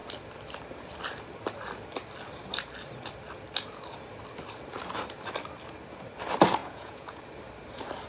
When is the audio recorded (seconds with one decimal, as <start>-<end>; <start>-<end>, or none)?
0.0-6.6; 7.2-8.1